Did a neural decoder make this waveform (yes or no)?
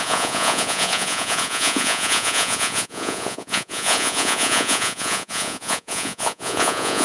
yes